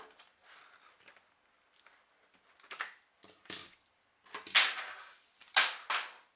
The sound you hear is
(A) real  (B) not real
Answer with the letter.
A